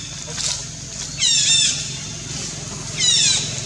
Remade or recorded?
recorded